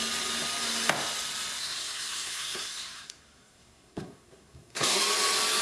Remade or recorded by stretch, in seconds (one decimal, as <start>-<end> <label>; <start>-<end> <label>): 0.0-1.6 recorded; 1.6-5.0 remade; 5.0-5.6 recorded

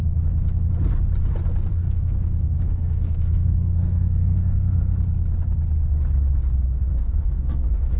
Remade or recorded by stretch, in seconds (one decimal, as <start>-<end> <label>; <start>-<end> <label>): 0.0-1.7 recorded; 1.7-4.8 remade; 4.8-6.8 recorded; 6.8-8.0 remade

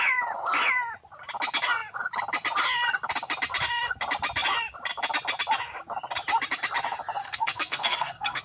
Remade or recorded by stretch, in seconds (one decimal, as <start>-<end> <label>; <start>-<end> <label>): 0.0-7.2 recorded; 7.2-8.4 remade